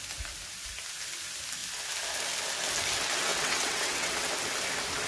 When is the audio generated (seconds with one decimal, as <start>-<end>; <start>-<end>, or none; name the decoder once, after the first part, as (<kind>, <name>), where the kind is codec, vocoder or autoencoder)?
3.3-4.3 (vocoder, WaveNeXt)